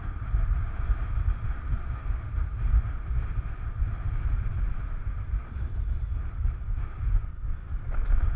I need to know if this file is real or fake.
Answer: real